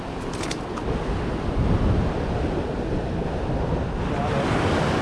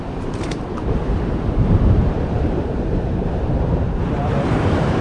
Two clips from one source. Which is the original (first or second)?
first